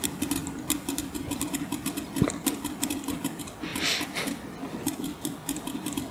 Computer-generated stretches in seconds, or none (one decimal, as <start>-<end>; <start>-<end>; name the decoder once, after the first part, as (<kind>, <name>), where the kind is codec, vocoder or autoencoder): none